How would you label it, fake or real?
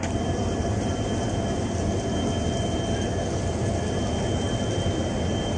real